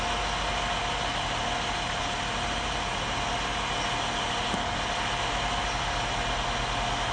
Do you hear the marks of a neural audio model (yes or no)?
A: no